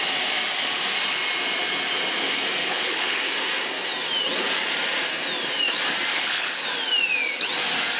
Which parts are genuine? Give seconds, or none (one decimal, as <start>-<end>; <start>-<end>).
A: 0.0-2.6; 3.2-6.1; 6.6-8.0